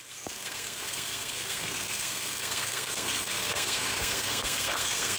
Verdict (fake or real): fake